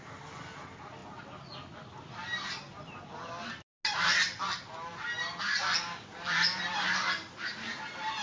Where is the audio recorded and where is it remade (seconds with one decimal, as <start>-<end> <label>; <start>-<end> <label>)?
0.0-8.2 recorded